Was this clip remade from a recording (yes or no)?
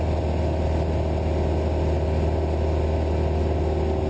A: no